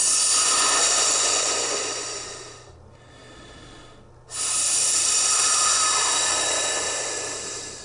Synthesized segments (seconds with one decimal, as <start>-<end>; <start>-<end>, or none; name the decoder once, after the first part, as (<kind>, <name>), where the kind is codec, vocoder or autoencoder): 0.0-2.2 (vocoder, Vocos)